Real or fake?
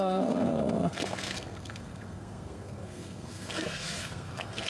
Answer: fake